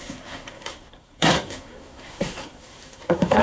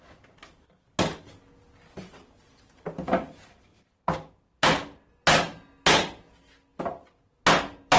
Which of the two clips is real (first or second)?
second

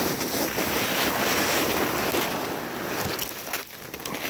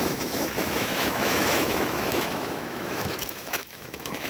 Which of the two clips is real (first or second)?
first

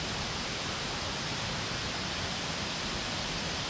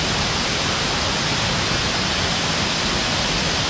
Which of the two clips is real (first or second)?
second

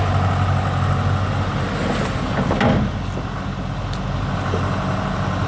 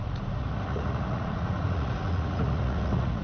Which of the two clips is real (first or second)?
first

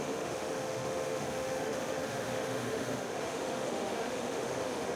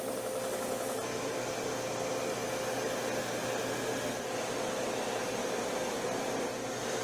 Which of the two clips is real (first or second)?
second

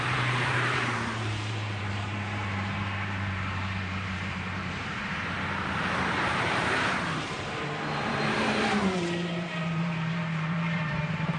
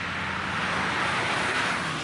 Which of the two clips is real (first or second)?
second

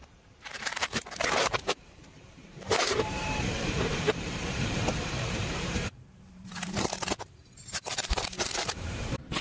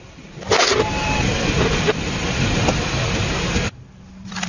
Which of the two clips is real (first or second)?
second